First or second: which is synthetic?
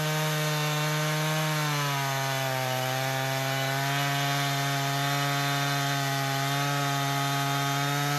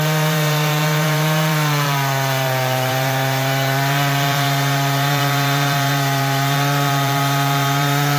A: second